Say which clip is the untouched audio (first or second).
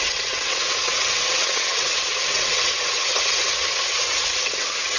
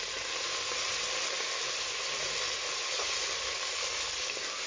second